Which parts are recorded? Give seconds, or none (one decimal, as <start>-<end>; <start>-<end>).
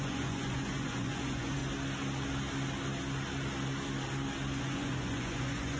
1.6-4.6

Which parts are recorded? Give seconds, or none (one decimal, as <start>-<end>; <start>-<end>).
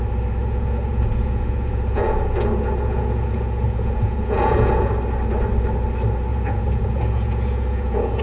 0.0-0.4; 4.7-6.3